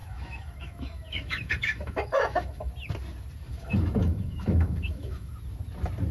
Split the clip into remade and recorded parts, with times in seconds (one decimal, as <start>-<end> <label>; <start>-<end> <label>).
0.0-2.7 remade; 2.7-3.5 recorded; 3.5-5.3 remade; 5.3-6.1 recorded